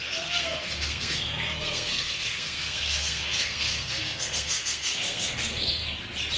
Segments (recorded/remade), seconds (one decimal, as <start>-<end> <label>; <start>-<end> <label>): 0.0-5.8 remade; 5.8-6.4 recorded